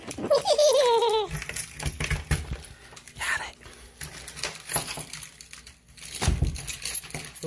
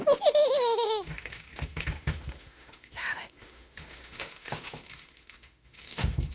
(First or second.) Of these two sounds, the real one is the first